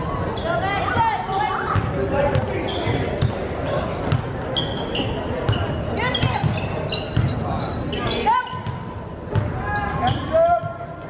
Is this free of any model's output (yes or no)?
yes